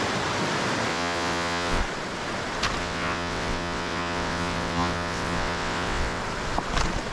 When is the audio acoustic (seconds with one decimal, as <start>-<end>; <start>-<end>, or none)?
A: 0.0-0.9; 1.8-2.8; 6.2-7.1